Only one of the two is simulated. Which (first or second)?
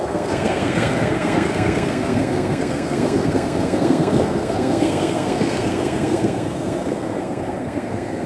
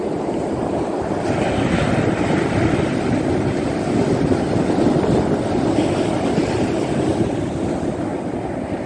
first